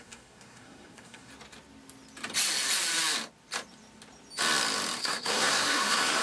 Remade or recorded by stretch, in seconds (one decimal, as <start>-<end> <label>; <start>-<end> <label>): 0.0-1.3 remade; 1.3-5.0 recorded; 5.0-6.2 remade